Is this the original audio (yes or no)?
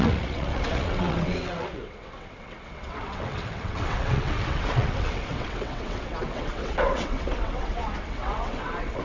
no